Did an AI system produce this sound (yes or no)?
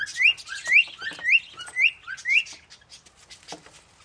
no